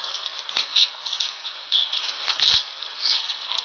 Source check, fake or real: fake